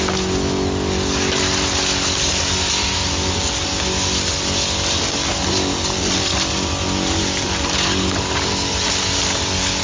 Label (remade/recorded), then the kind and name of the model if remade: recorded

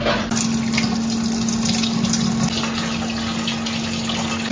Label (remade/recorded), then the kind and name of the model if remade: recorded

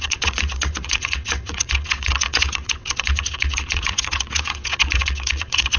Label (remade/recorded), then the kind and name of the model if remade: remade, vocoder, WaveNeXt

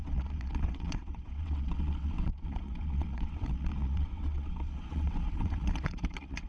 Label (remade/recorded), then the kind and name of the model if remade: remade, vocoder, WaveNeXt